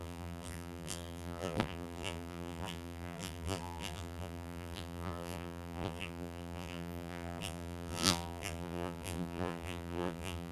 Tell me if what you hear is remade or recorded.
remade